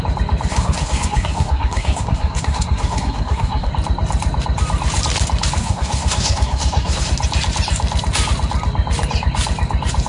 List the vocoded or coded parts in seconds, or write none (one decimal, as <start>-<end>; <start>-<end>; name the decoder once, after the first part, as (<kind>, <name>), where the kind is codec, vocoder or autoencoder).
0.5-3.7 (codec, SNAC); 5.6-7.1